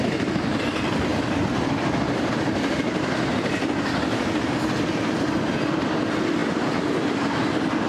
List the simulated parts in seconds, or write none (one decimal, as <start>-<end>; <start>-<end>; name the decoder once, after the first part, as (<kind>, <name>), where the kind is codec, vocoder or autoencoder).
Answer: 0.0-7.9 (vocoder, BigVGAN v2)